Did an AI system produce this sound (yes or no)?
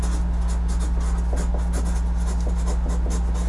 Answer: no